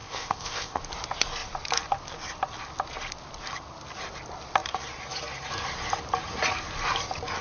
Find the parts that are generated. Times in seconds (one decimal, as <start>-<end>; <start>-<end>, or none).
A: 0.0-0.8